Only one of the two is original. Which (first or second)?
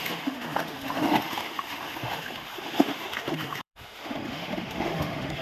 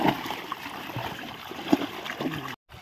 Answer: second